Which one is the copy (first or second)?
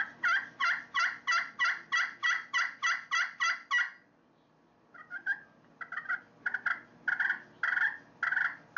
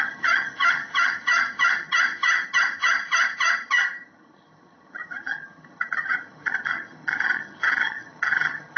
second